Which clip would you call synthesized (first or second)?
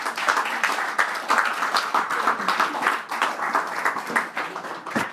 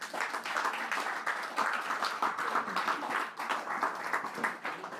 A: second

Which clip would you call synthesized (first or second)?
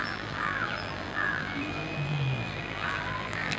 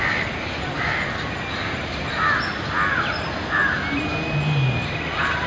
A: first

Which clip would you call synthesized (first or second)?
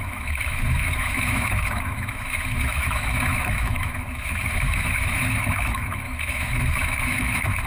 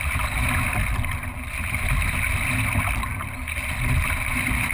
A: first